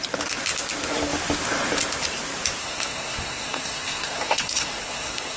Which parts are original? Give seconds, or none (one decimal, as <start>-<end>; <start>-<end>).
0.0-2.6